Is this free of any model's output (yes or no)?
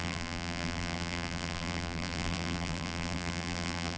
no